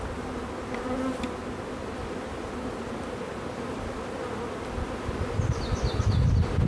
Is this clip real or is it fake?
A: real